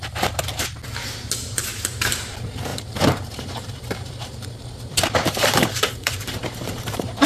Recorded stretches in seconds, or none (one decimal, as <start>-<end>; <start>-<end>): 0.0-2.7